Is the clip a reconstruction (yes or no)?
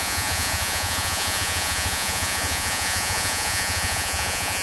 yes